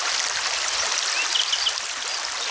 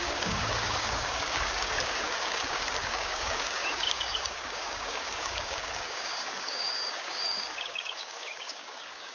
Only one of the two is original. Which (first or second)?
first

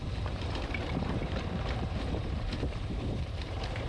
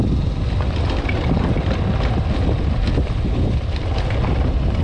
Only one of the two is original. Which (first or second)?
second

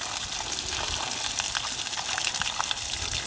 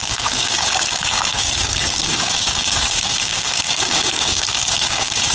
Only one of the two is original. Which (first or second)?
first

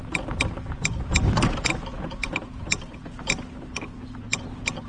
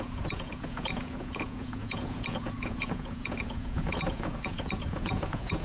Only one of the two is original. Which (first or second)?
first